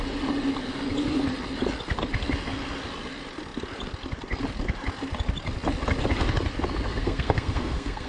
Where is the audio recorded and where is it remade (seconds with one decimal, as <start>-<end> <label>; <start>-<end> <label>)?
0.0-6.9 recorded; 6.9-8.1 remade